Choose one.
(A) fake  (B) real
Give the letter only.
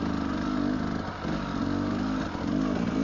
B